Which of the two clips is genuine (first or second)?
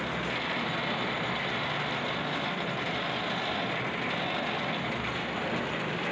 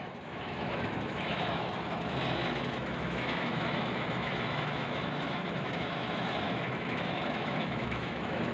first